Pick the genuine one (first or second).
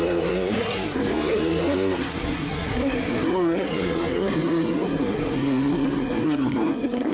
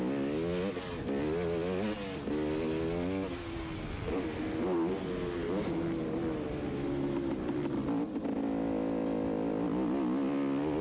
second